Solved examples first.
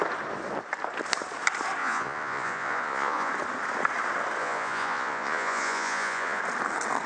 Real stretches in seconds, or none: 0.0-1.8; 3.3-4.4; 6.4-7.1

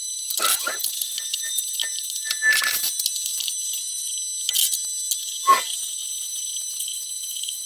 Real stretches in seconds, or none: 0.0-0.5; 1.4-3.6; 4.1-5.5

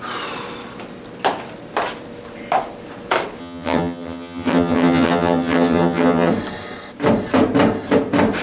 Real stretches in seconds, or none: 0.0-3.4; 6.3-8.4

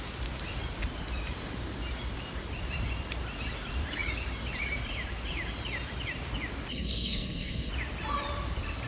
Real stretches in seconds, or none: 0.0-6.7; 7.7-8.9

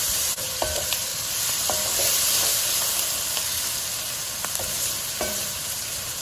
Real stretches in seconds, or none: 1.1-4.6